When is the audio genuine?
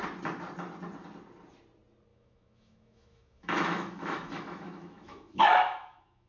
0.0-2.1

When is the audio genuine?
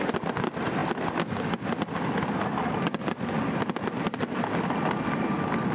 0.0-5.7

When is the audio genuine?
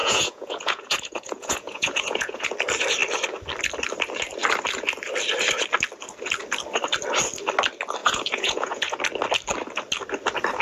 2.5-8.0; 9.0-10.6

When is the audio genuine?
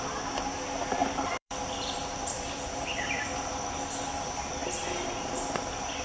0.0-1.0; 3.4-6.0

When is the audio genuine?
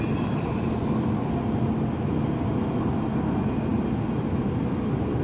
0.0-5.2